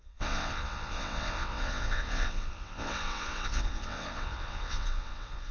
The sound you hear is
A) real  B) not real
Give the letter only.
B